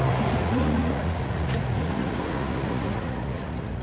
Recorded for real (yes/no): no